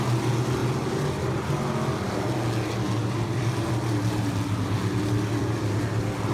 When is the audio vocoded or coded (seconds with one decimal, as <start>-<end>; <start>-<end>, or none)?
none